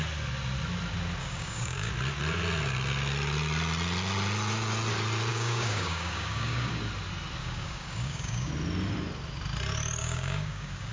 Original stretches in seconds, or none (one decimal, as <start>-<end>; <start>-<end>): 0.0-1.2; 1.9-5.3; 6.7-7.4; 8.5-10.0

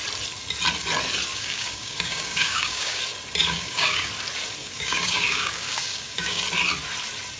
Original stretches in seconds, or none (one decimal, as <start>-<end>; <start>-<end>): 0.0-1.3; 3.0-3.4; 4.1-4.6; 6.4-7.4

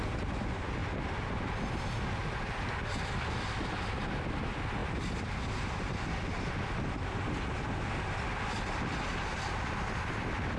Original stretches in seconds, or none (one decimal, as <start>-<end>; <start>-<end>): 0.0-10.6

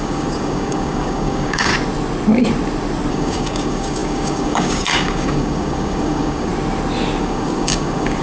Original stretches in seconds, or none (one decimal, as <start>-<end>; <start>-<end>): 1.7-3.1; 6.5-7.2

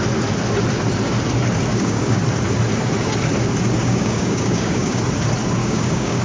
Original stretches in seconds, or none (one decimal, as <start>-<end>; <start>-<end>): 0.0-1.7; 2.2-3.8; 5.0-5.6